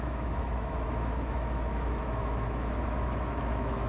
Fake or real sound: fake